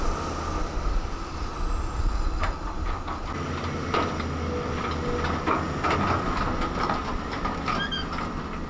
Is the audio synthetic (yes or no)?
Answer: no